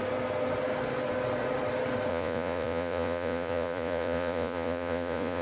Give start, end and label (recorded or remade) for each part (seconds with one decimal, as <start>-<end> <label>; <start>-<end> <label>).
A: 0.0-2.1 recorded; 2.1-5.4 remade